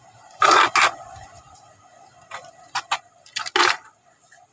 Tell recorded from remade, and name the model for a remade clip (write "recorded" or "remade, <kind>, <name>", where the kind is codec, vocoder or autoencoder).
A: recorded